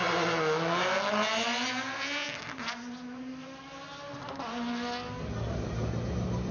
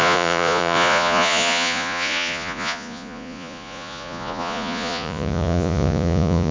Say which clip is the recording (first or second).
first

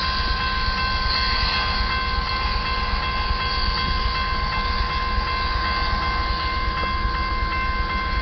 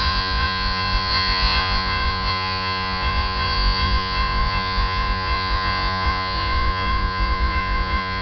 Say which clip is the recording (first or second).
first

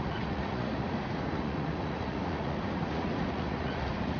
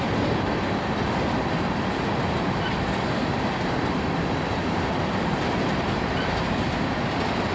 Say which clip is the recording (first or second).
second